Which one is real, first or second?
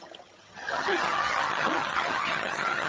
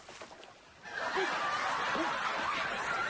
second